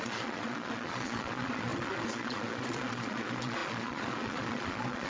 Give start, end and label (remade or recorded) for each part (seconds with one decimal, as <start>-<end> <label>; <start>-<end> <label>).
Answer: 0.0-5.1 remade

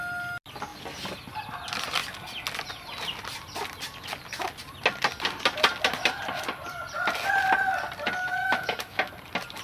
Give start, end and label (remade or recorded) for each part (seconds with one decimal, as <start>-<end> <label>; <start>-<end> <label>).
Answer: 0.0-8.4 recorded; 8.4-9.1 remade; 9.1-9.6 recorded

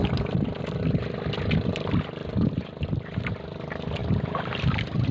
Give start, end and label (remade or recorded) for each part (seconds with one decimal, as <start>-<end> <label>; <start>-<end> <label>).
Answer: 0.0-0.8 remade; 0.8-2.2 recorded; 2.2-3.3 remade; 3.3-4.0 recorded; 4.0-5.1 remade

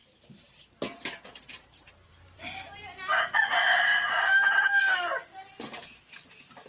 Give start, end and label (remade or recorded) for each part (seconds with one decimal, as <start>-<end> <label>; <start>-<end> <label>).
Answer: 0.0-2.4 remade; 2.4-6.7 recorded

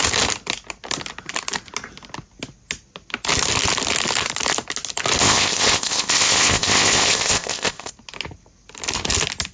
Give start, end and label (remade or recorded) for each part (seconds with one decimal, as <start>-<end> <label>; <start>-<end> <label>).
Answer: 0.0-5.2 recorded; 5.2-7.9 remade; 7.9-9.5 recorded

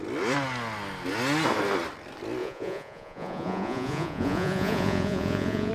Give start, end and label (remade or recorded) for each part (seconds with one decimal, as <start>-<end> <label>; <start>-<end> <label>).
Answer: 0.0-2.4 recorded; 2.4-5.7 remade